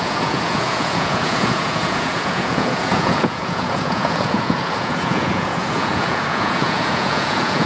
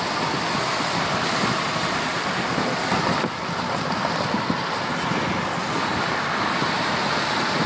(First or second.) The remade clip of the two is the first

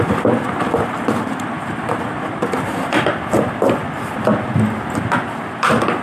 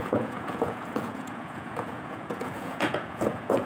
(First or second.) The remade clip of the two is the second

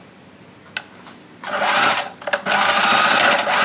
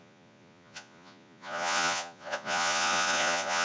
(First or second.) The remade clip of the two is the second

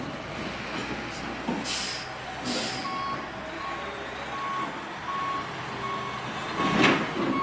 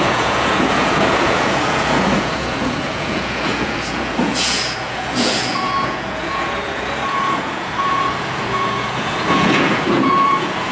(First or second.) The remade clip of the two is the second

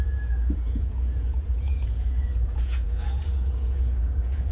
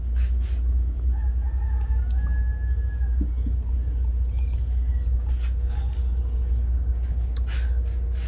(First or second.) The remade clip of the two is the first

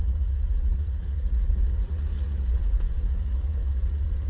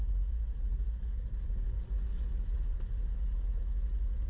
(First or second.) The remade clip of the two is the first